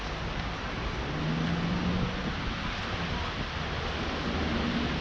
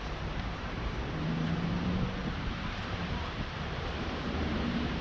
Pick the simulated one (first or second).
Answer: second